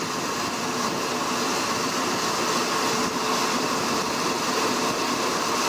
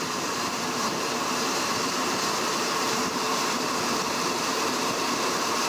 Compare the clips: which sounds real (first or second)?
first